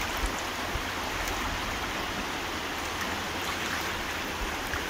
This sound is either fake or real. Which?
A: real